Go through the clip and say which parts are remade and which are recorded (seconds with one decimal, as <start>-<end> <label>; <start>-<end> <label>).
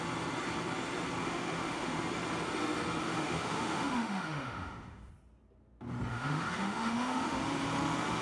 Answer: 0.0-1.2 recorded; 1.2-2.0 remade; 2.0-3.0 recorded; 3.0-5.1 remade; 5.1-6.1 recorded; 6.1-7.4 remade; 7.4-8.2 recorded